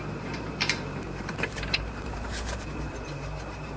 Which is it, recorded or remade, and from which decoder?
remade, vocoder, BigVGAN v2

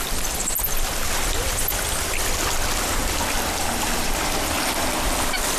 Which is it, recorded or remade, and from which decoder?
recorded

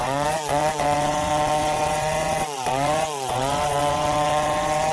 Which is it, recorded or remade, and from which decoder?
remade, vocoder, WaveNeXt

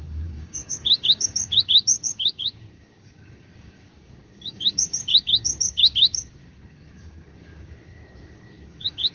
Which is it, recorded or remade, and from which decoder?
remade, codec, DAC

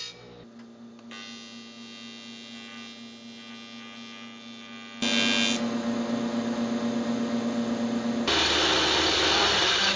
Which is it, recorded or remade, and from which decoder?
recorded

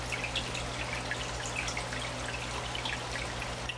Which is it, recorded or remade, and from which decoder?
recorded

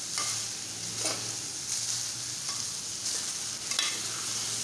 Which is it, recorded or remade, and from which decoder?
recorded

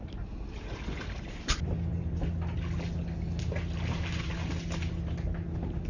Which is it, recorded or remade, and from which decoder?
recorded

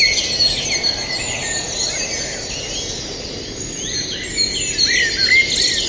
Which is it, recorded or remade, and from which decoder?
recorded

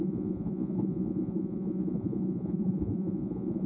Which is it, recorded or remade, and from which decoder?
remade, vocoder, Vocos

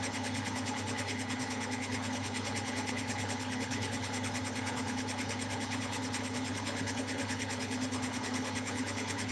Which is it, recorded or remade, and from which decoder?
remade, codec, HILCodec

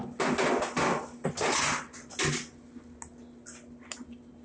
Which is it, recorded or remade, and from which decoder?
recorded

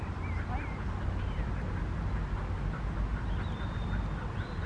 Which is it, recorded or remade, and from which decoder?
recorded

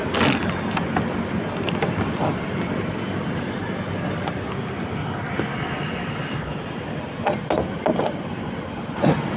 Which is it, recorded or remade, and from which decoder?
recorded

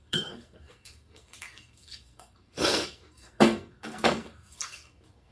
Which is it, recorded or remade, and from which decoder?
remade, codec, SNAC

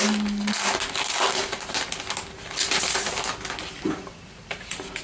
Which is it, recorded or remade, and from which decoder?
recorded